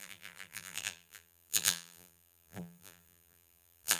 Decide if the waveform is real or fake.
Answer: fake